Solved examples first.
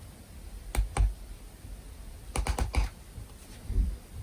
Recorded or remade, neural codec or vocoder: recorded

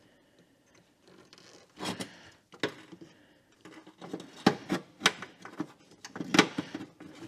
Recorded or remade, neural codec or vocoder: recorded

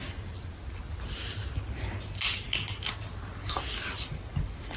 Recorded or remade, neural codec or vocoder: recorded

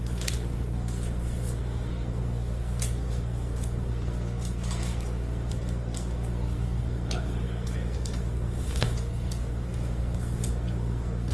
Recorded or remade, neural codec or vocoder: remade, codec, SNAC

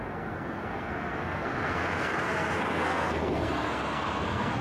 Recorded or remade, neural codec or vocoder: remade, codec, SNAC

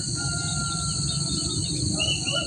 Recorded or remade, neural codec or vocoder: recorded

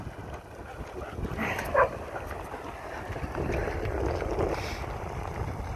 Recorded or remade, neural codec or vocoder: recorded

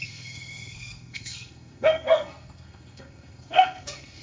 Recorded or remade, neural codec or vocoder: remade, codec, SNAC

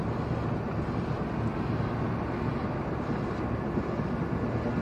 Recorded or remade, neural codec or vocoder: recorded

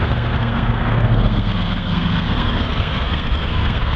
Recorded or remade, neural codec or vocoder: remade, codec, SNAC